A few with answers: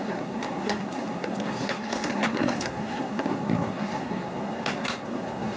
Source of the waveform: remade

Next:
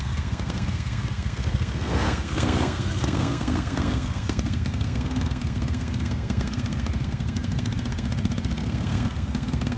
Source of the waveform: remade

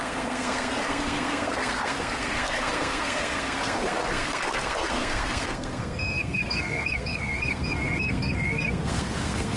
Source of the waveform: remade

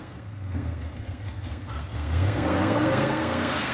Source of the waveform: remade